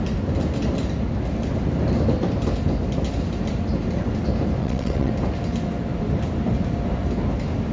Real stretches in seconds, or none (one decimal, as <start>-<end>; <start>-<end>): 0.0-4.6; 5.1-7.7